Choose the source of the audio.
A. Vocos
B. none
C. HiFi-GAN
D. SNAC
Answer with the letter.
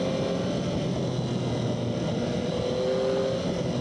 B